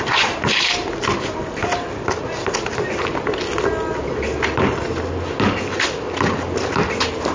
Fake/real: real